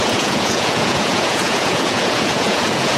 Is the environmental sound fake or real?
fake